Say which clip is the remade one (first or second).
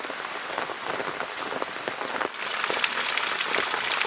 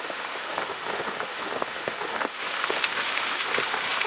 second